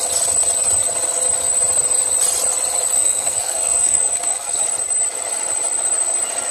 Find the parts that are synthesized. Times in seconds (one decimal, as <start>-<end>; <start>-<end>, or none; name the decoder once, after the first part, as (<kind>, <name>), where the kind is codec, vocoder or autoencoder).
3.0-4.6 (codec, SNAC)